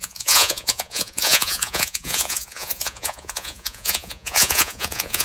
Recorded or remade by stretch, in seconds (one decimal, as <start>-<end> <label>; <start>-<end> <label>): 0.0-5.2 remade